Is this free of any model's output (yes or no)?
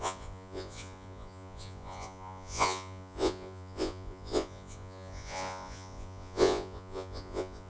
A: no